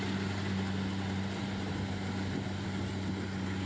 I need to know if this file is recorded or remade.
recorded